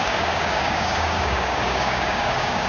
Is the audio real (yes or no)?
no